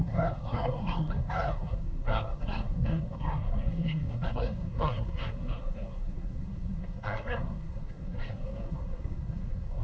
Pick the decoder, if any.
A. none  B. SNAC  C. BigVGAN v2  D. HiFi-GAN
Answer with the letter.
B